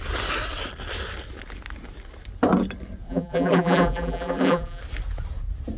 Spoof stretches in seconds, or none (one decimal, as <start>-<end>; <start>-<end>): 3.1-4.8